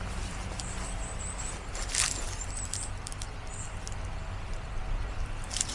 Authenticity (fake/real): real